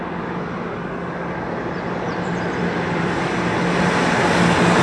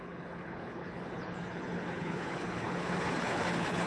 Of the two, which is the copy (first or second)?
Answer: second